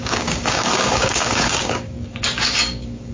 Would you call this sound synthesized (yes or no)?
yes